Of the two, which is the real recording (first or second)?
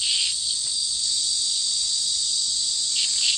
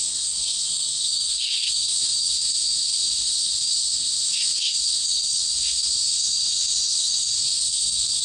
first